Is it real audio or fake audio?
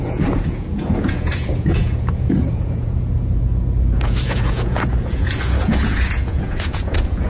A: fake